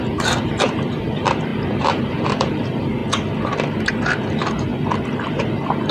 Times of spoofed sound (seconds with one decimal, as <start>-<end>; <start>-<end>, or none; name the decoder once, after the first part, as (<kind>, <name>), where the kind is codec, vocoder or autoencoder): 0.0-3.0 (vocoder, BigVGAN v2); 3.9-4.7; 5.2-5.9